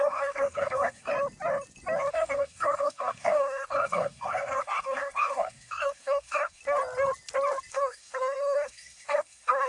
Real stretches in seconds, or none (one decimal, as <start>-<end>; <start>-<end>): 1.1-2.1; 6.6-7.7